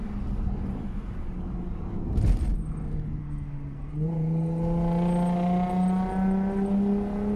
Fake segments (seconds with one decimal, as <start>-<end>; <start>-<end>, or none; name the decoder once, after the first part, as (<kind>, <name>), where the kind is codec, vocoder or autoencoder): 3.2-3.9 (codec, SNAC)